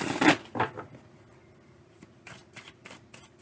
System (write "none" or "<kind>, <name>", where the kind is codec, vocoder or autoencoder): none